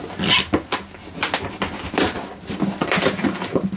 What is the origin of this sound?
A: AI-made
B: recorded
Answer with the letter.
B